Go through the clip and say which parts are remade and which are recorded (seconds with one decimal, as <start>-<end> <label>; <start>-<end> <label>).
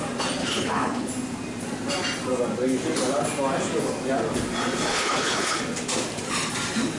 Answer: 0.0-0.4 recorded; 0.4-1.1 remade; 1.1-4.9 recorded; 4.9-5.6 remade; 5.6-7.0 recorded